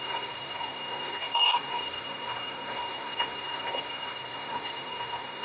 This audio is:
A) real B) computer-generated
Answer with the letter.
B